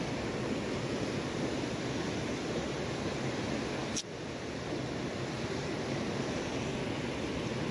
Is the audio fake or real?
real